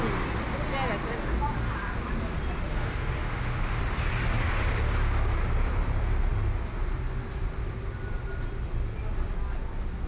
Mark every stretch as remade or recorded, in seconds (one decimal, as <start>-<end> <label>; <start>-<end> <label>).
0.0-2.7 recorded; 2.7-3.8 remade; 3.8-10.1 recorded